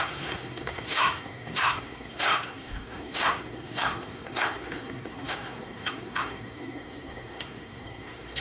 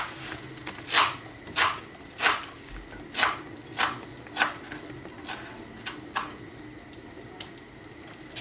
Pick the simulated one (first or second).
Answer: first